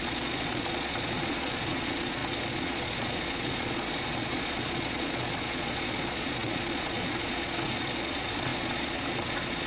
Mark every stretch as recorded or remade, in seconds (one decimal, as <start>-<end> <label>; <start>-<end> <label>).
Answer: 0.0-9.7 remade